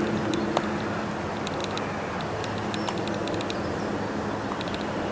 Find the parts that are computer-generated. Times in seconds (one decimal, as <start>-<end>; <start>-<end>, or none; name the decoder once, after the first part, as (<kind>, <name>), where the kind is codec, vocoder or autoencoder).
none